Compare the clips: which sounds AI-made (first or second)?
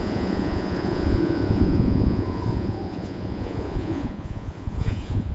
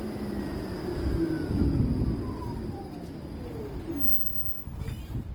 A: first